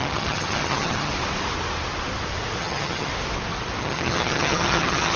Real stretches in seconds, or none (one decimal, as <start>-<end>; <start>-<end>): 1.1-2.6; 3.1-3.8